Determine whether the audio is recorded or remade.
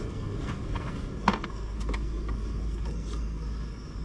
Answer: remade